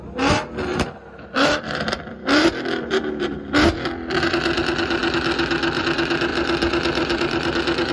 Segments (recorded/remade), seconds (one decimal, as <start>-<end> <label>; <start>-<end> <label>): 0.0-0.7 recorded; 0.7-4.6 remade; 4.6-6.3 recorded; 6.3-7.9 remade